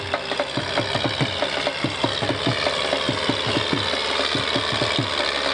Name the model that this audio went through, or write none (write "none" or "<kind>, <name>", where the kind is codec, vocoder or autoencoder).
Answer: none